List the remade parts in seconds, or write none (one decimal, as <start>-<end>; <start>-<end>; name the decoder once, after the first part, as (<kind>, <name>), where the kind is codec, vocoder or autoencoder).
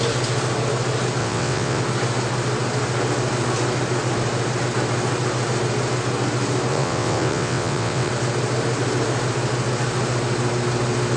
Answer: 1.2-1.8 (vocoder, WaveNeXt); 6.7-8.1